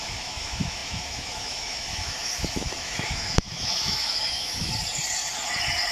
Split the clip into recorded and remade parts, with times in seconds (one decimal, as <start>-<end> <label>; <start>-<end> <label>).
0.0-4.7 remade; 4.7-5.9 recorded